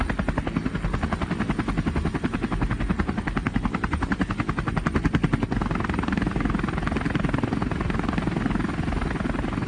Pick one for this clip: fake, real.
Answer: real